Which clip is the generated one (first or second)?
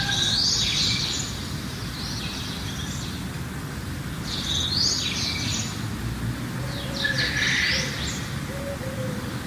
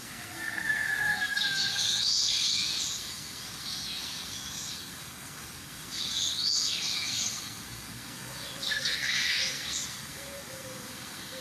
second